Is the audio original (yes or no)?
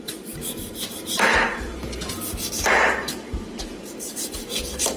no